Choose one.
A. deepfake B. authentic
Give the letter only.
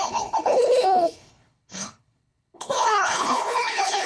A